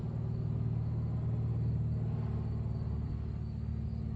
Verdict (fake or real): real